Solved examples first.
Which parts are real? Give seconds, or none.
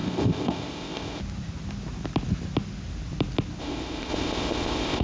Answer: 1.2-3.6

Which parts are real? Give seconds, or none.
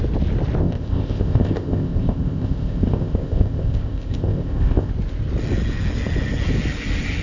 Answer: 0.0-0.6; 4.9-7.2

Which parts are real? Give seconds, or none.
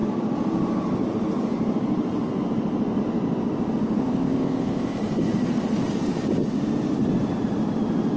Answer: 0.0-4.0; 5.0-8.2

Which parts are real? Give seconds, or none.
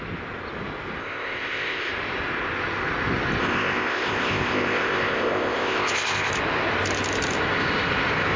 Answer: 0.0-1.0; 1.9-3.4; 6.3-8.4